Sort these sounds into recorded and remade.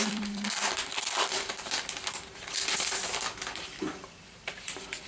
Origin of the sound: remade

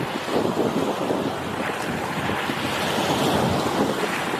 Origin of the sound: recorded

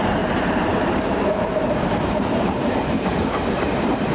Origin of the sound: remade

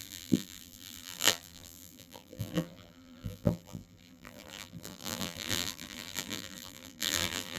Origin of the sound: remade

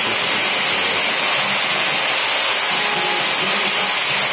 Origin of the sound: recorded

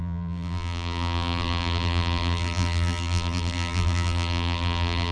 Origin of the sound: remade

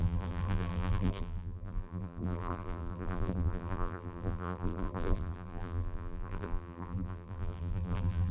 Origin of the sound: remade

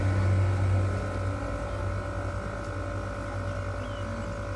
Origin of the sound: recorded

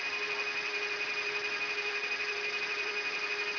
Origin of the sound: remade